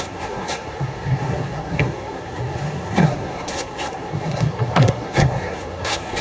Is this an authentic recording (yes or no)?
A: no